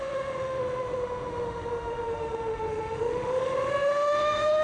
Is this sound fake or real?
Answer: fake